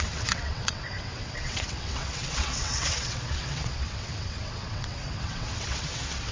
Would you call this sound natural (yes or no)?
no